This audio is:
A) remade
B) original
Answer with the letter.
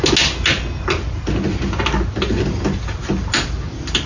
B